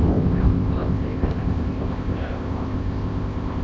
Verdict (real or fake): fake